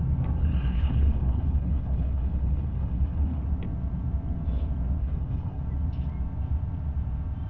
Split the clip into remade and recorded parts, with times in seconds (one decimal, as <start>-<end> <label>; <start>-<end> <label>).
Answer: 0.0-0.4 recorded; 0.4-3.4 remade; 3.4-5.0 recorded; 5.0-5.6 remade; 5.6-7.5 recorded